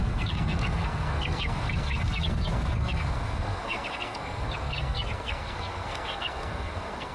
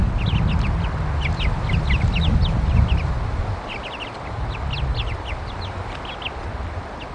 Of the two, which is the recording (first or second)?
second